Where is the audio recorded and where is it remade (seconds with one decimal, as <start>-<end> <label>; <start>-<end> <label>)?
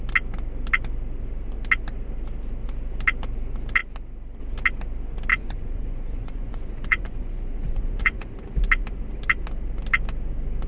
0.0-5.3 recorded; 5.3-8.3 remade; 8.3-10.7 recorded